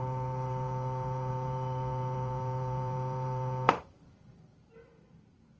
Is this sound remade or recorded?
remade